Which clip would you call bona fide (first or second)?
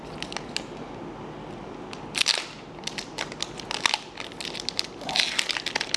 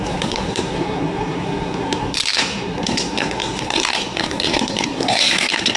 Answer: first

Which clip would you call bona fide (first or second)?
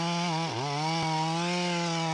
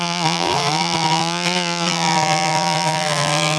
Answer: first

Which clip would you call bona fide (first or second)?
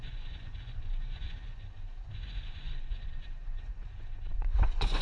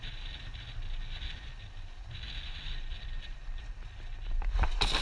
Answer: second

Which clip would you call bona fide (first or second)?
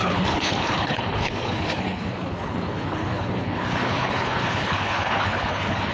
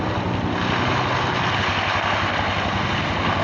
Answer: second